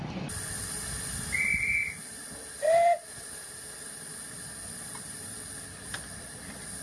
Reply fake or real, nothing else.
real